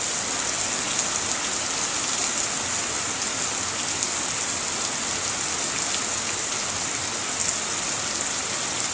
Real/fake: real